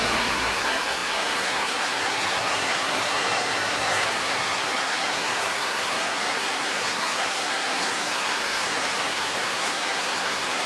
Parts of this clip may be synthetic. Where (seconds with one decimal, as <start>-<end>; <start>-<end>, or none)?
0.0-10.7